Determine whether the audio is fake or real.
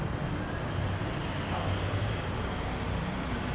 real